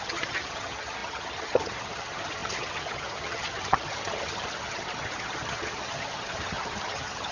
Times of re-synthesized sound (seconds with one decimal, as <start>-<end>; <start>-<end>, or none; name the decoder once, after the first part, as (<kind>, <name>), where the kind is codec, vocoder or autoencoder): 0.0-7.3 (vocoder, HiFi-GAN)